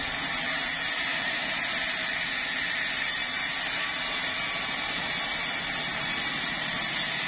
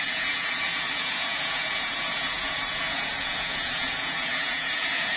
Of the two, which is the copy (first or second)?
second